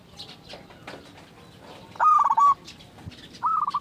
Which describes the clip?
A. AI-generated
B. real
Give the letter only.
B